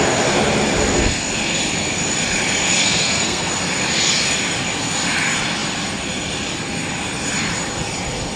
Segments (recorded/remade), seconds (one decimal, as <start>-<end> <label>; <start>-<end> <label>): 0.0-0.9 recorded; 0.9-1.6 remade; 1.6-2.8 recorded; 2.8-3.5 remade; 3.5-8.4 recorded